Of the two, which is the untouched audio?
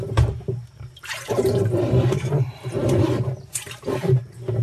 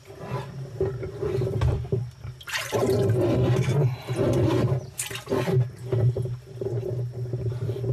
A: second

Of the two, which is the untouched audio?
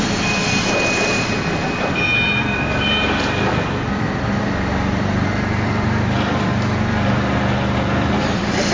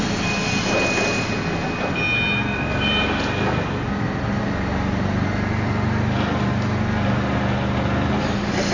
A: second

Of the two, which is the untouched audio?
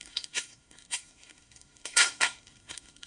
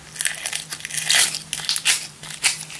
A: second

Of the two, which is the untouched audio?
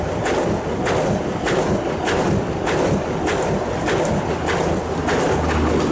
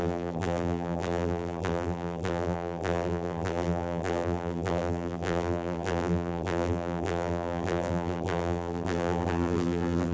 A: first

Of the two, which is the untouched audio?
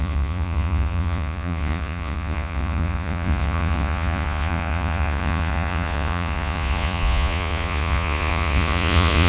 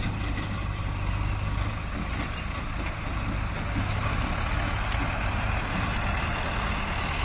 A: second